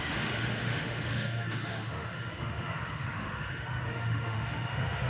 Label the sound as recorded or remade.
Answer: remade